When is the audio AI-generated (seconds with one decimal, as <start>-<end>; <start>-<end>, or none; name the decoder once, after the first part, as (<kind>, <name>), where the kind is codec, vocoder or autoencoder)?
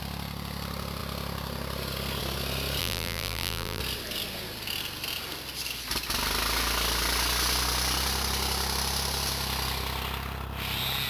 2.8-3.8 (vocoder, BigVGAN v2)